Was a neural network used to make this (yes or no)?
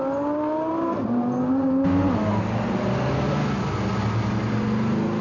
no